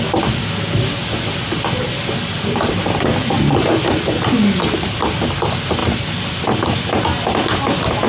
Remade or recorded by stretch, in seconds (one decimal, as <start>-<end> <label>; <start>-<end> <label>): 0.0-8.1 recorded